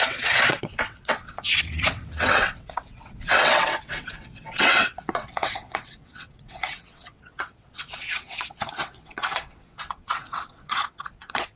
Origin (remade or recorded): remade